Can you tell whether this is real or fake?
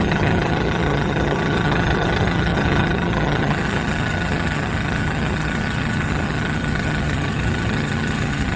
fake